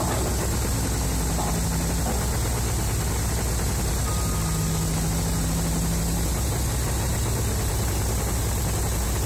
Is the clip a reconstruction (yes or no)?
no